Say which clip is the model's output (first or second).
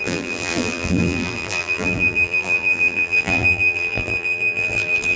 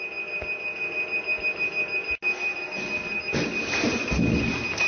first